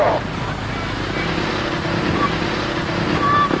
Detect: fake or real real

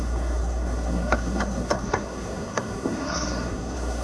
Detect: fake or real fake